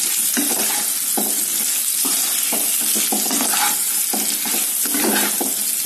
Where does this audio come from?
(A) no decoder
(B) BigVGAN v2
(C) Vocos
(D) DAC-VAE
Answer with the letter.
A